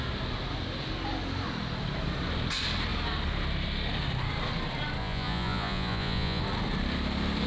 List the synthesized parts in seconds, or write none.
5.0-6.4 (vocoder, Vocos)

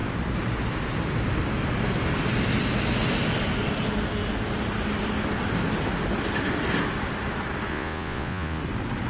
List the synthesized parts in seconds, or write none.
7.7-8.6 (vocoder, Vocos)

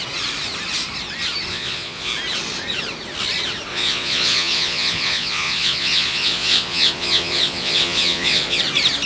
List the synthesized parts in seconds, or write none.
1.5-2.1 (vocoder, Vocos); 3.7-8.6

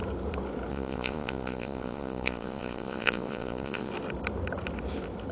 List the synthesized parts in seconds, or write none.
0.7-3.9 (vocoder, Vocos)

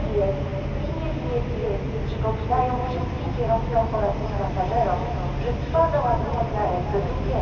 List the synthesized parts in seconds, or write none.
none

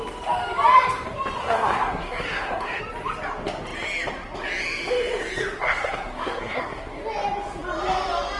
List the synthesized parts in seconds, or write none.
1.4-2.8 (codec, SNAC); 5.6-7.0

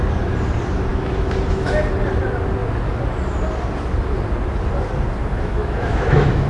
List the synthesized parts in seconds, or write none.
0.9-1.9 (autoencoder, DAC-VAE); 5.2-6.5